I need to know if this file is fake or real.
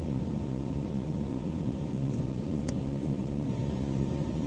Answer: fake